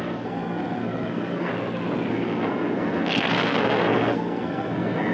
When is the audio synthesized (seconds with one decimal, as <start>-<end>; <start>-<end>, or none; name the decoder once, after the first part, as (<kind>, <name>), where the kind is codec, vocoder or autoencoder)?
0.0-1.5 (codec, SNAC); 2.1-5.1